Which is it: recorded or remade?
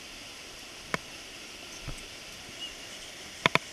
recorded